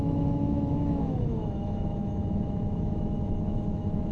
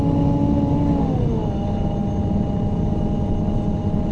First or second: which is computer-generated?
first